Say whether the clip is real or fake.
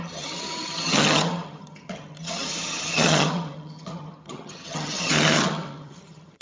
fake